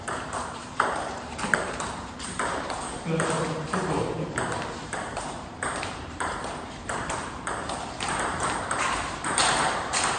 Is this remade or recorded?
remade